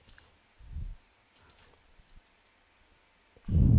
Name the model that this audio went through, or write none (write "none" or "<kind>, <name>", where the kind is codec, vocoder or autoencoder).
none